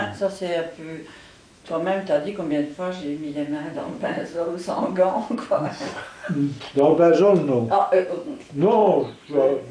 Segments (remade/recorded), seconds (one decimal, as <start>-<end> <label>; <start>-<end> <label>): 0.0-6.2 remade; 6.2-6.7 recorded; 6.7-8.8 remade; 8.8-9.7 recorded